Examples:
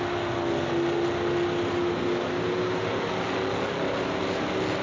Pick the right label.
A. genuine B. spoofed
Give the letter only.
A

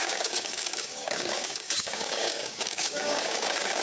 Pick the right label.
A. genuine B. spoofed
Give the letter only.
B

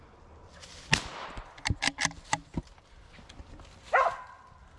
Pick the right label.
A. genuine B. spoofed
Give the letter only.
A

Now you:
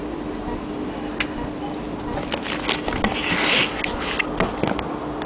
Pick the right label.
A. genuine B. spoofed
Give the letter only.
A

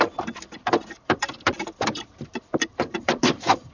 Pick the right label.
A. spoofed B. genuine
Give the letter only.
A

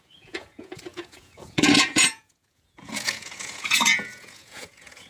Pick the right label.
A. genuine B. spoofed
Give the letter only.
B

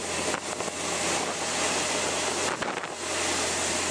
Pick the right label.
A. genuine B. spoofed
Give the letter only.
A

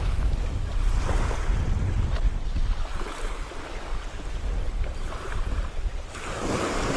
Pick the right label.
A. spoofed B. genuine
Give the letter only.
B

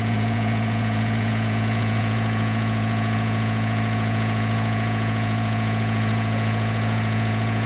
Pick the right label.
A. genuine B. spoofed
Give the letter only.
B